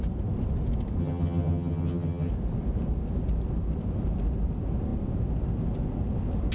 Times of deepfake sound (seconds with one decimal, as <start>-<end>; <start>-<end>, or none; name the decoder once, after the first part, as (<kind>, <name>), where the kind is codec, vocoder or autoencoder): 1.0-2.3 (vocoder, HiFi-GAN)